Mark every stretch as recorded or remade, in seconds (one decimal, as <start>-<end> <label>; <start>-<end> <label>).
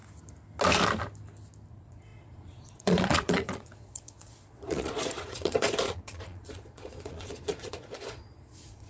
0.0-1.7 recorded; 1.7-8.9 remade